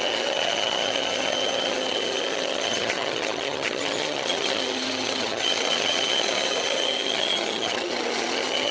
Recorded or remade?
remade